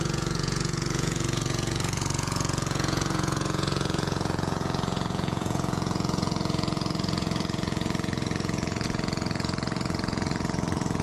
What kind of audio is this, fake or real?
fake